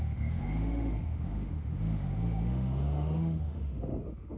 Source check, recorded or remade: remade